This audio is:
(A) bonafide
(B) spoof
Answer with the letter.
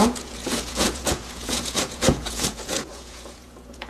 B